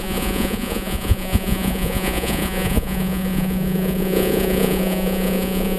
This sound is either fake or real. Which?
fake